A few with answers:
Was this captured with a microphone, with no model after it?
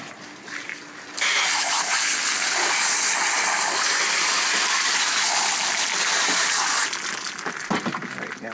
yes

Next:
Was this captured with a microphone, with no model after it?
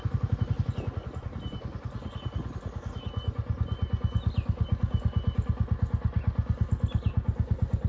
yes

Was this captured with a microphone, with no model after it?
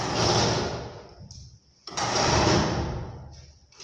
yes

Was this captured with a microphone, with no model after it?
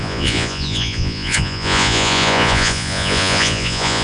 no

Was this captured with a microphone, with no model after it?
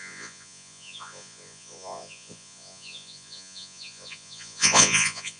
no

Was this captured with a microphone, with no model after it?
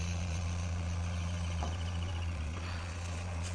no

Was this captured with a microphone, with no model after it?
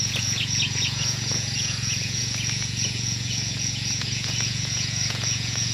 no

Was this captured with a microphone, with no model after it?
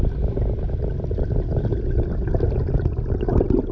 yes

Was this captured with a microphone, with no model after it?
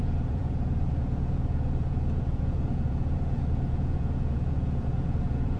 no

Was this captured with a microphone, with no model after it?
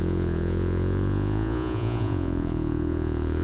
no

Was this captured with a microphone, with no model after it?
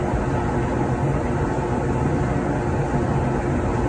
yes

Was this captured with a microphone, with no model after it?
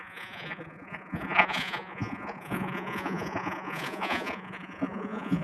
no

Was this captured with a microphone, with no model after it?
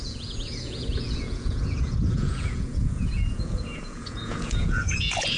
no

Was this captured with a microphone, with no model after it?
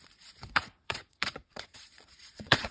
no